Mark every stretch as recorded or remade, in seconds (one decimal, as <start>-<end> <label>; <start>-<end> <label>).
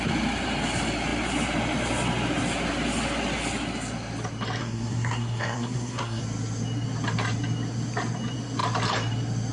0.0-4.6 recorded; 4.6-6.2 remade; 6.2-9.5 recorded